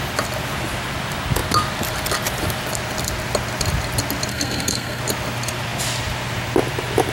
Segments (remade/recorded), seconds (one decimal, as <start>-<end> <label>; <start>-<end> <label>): 0.0-4.3 recorded; 4.3-5.0 remade; 5.0-7.1 recorded